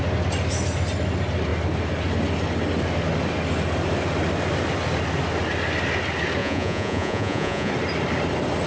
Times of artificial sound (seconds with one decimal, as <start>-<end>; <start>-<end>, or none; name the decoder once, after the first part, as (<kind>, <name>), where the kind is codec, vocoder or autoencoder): 6.4-7.7 (vocoder, Vocos)